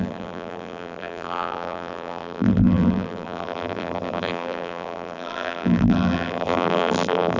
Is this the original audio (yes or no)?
no